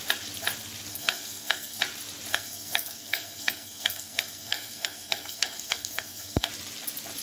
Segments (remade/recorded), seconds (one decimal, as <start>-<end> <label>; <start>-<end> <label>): 0.0-0.9 recorded; 0.9-1.8 remade; 1.8-2.3 recorded; 2.3-6.5 remade; 6.5-7.2 recorded